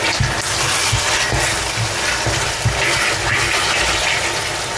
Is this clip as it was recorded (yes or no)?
yes